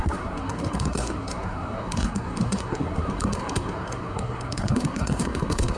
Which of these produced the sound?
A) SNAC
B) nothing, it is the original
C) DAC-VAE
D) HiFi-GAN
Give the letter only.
A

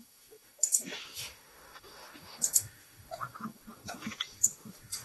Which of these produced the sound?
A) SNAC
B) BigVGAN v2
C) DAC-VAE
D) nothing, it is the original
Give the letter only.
C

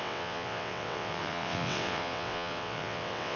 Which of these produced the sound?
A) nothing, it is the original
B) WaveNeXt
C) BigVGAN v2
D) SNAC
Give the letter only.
B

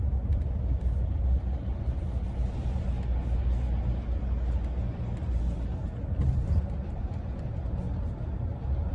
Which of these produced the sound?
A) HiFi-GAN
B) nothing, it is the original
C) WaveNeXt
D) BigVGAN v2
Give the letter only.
B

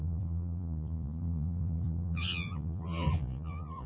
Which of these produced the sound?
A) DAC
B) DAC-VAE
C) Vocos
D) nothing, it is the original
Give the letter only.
C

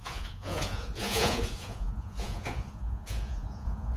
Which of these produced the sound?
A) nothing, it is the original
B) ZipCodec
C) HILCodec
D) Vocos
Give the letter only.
D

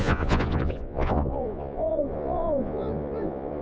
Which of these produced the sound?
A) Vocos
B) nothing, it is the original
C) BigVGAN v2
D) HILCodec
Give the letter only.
A